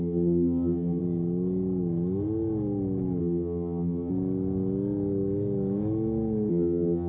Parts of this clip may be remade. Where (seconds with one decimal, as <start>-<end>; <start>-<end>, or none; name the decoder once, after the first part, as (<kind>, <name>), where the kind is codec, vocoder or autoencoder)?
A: 0.0-1.0 (vocoder, HiFi-GAN); 3.2-4.1; 6.5-7.1